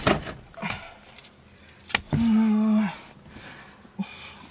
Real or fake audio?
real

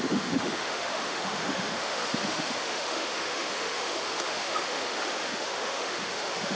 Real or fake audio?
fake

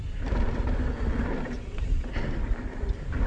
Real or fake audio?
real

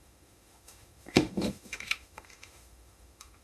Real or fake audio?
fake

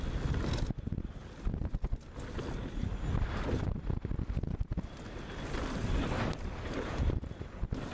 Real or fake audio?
real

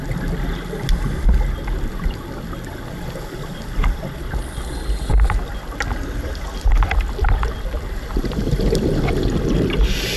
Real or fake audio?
real